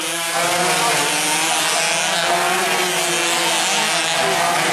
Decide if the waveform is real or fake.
real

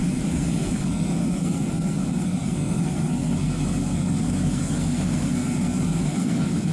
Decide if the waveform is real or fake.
fake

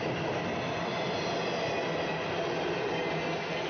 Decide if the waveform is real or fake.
real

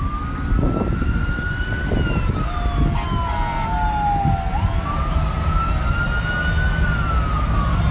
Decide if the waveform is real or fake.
real